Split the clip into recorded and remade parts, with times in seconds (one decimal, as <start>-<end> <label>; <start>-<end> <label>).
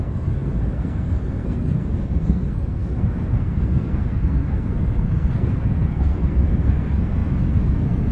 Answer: 0.0-8.1 remade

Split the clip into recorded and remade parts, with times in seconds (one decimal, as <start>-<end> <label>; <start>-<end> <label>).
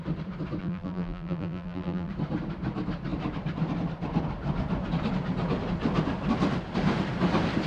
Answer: 0.0-0.6 recorded; 0.6-2.1 remade; 2.1-7.7 recorded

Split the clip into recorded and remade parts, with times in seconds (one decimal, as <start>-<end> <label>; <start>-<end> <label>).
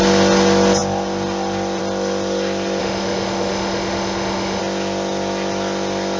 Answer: 0.0-2.8 recorded; 2.8-4.6 remade; 4.6-6.2 recorded